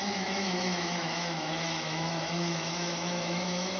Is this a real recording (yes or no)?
no